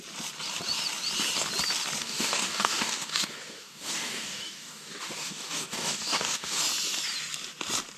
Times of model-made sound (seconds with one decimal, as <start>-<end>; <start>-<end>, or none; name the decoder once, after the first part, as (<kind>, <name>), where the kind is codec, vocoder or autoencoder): 2.0-6.6 (codec, DAC)